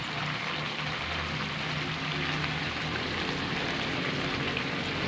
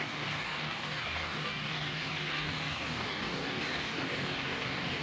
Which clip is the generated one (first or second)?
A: second